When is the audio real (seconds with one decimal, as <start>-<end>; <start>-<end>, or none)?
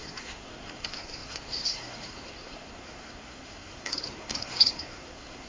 none